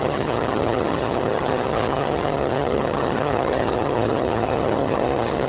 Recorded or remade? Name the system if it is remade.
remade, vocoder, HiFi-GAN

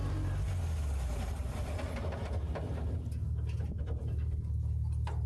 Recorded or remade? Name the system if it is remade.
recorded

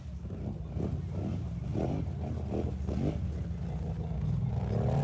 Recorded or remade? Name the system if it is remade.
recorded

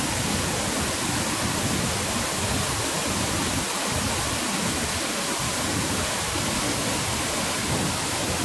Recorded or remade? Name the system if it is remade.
recorded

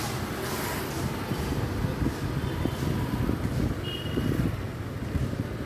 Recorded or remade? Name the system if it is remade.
recorded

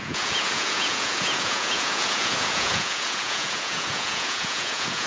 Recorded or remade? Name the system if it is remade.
remade, vocoder, Vocos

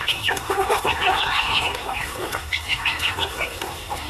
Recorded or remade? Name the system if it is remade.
remade, codec, SNAC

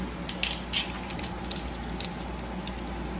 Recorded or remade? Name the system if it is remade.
recorded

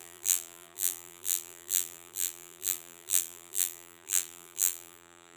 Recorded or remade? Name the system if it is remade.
remade, vocoder, BigVGAN v2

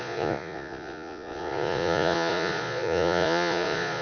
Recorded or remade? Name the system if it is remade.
remade, vocoder, Vocos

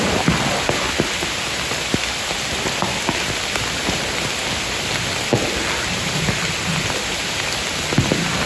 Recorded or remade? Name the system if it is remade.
recorded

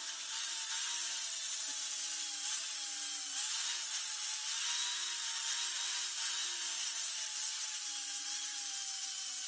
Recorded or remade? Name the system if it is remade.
recorded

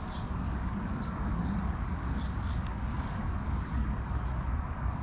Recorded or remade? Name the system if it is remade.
remade, codec, DAC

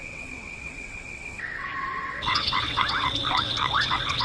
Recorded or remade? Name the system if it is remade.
remade, vocoder, WaveNeXt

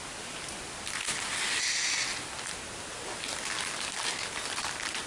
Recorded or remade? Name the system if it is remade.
recorded